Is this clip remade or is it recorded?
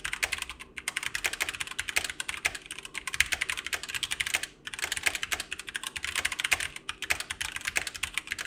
recorded